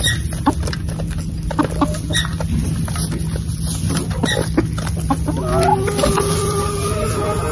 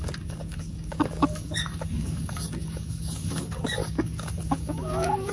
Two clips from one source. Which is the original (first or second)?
first